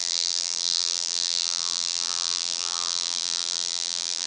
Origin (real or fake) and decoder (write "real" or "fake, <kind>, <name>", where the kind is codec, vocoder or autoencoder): fake, vocoder, BigVGAN v2